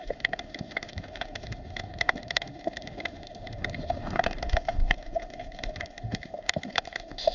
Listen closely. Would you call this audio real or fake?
fake